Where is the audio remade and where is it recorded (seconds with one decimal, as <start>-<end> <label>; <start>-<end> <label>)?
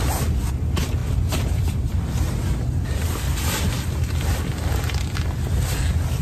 0.0-6.2 recorded